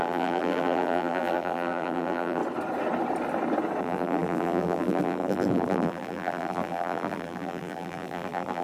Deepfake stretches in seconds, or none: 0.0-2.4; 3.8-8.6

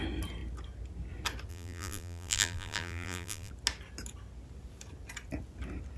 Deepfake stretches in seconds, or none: 1.5-3.5

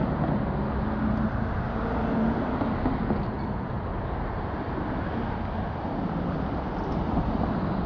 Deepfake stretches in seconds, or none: none

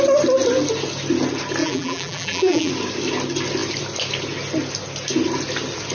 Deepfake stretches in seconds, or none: 1.6-2.7

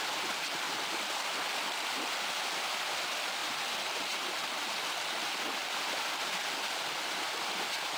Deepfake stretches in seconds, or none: 0.0-3.4; 5.8-8.0

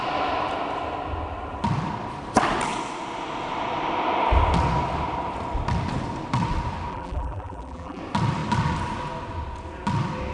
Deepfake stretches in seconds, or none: 6.9-8.0

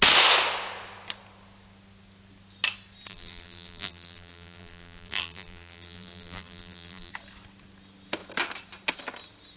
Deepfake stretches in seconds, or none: 3.1-7.1

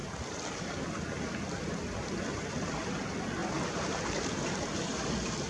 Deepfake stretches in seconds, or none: 0.0-2.9; 3.4-5.1